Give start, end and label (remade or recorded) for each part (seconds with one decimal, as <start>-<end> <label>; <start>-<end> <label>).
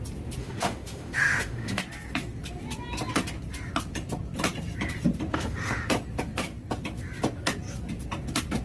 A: 0.0-0.4 recorded; 0.4-1.8 remade; 1.8-5.3 recorded; 5.3-5.9 remade; 5.9-8.6 recorded